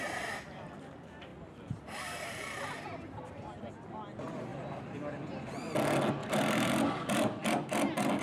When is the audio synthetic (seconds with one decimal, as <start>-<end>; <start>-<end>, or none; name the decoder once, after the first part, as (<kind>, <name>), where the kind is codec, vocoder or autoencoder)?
1.3-3.7 (vocoder, BigVGAN v2); 6.2-6.7